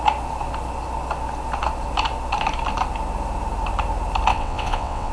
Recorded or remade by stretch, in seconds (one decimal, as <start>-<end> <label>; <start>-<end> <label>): 0.0-4.3 recorded; 4.3-5.1 remade